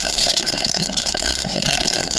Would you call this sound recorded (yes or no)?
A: no